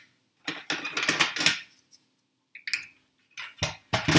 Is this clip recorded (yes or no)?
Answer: yes